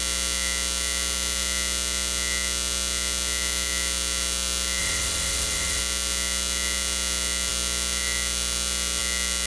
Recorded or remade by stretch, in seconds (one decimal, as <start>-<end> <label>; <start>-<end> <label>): 0.0-4.8 recorded; 4.8-5.8 remade; 5.8-9.5 recorded